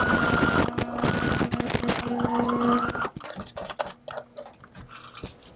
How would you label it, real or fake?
real